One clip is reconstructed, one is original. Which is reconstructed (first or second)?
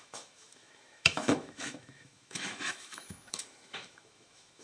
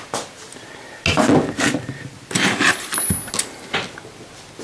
first